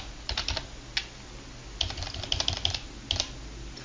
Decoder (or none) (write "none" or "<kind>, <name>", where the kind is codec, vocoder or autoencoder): none